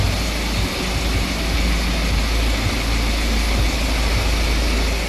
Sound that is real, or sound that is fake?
real